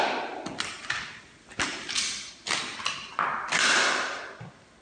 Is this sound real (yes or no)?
yes